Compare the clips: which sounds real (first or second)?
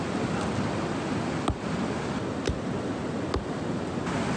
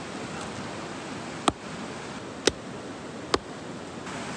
second